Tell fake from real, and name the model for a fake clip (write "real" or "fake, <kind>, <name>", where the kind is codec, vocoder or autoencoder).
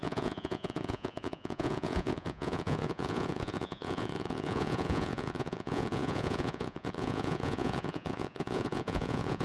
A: fake, vocoder, Vocos